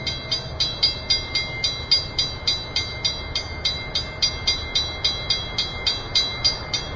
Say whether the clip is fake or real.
real